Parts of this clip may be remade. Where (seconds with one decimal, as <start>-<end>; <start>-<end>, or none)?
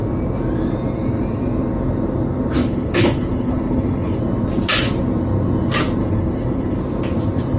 2.6-4.2; 6.0-6.8